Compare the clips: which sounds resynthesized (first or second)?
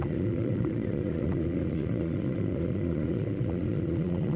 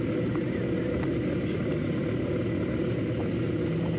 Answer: first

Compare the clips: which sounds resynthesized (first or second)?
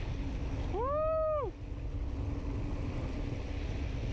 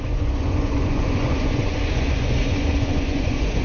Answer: second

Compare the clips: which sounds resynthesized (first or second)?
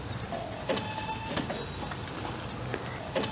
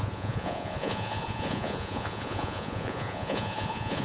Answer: second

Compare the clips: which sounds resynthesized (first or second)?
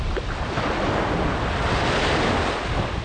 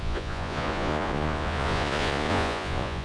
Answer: second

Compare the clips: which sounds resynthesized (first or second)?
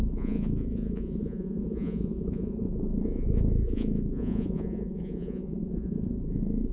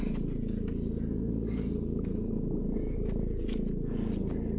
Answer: first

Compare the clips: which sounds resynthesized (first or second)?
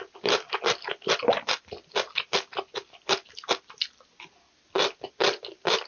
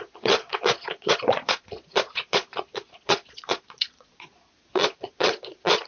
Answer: second